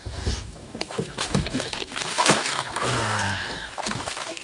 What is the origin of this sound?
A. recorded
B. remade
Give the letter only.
B